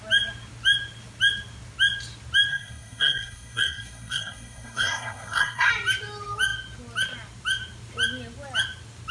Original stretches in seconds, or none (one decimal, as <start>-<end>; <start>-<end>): 0.0-2.5; 5.7-9.1